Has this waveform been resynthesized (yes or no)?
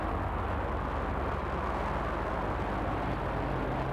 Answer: no